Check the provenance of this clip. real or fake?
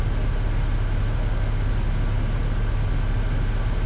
real